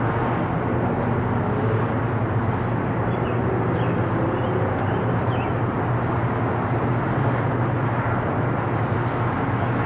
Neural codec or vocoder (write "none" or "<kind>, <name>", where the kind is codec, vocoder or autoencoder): none